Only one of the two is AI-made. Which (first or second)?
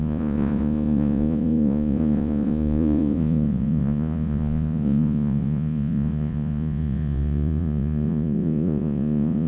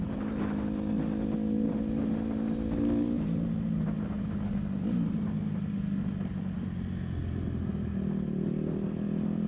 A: first